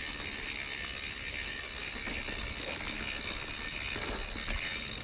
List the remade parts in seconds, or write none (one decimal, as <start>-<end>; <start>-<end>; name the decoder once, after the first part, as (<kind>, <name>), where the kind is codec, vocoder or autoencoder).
none